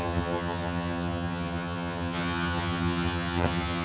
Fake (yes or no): yes